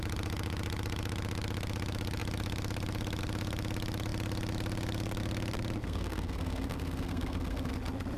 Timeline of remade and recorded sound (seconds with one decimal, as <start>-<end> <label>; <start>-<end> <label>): 0.0-5.8 recorded; 5.8-7.7 remade; 7.7-8.2 recorded